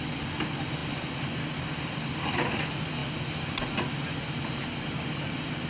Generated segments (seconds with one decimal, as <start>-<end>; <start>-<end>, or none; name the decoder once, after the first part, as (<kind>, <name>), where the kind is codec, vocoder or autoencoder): none